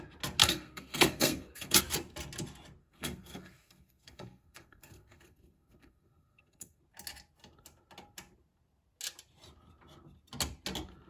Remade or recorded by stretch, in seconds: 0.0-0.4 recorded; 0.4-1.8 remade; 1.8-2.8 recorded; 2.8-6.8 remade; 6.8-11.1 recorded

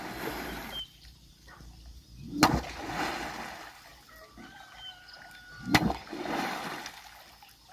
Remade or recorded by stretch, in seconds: 0.0-0.6 recorded; 0.6-1.3 remade; 1.3-7.7 recorded

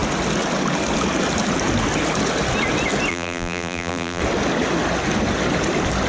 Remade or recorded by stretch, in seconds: 0.0-3.1 recorded; 3.1-4.2 remade; 4.2-6.1 recorded

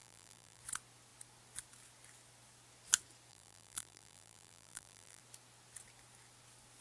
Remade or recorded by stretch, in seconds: 0.0-0.6 remade; 0.6-3.3 recorded; 3.3-5.2 remade; 5.2-6.8 recorded

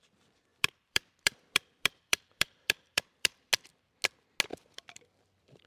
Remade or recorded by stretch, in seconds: 0.0-0.5 recorded; 0.5-3.5 remade; 3.5-4.5 recorded; 4.5-5.7 remade

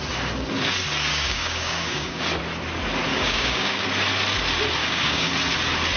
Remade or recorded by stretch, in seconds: 0.0-1.1 recorded; 1.1-2.2 remade; 2.2-3.1 recorded; 3.1-3.8 remade; 3.8-4.8 recorded; 4.8-5.3 remade; 5.3-6.0 recorded

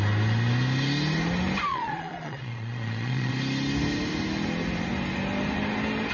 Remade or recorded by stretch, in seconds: 0.0-1.7 recorded; 1.7-3.3 remade; 3.3-6.1 recorded

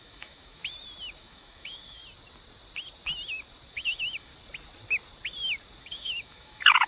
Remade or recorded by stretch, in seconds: 0.0-0.6 remade; 0.6-1.2 recorded; 1.2-2.0 remade; 2.0-3.7 recorded; 3.7-4.3 remade; 4.3-5.8 recorded; 5.8-6.9 remade